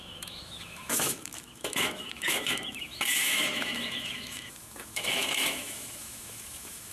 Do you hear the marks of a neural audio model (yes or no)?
yes